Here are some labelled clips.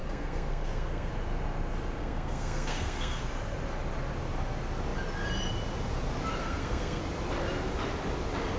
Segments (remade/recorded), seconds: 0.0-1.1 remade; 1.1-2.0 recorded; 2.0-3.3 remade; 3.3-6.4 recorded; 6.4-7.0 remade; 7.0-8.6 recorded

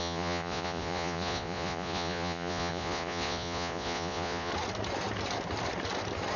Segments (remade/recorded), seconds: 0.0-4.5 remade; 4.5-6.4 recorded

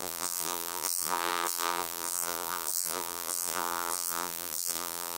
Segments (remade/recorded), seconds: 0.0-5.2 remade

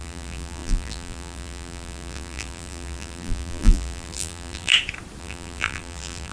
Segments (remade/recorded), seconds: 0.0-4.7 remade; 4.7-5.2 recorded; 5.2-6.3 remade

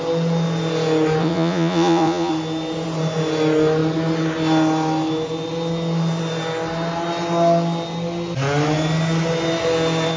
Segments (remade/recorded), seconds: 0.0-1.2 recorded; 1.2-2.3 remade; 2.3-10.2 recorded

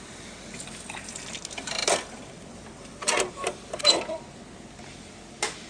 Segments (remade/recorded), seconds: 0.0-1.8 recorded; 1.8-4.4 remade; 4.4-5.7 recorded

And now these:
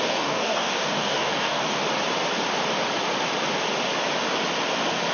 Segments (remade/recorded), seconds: 0.0-1.8 remade; 1.8-5.1 recorded

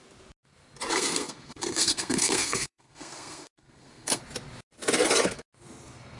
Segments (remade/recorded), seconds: 0.0-0.9 recorded; 0.9-4.2 remade; 4.2-6.2 recorded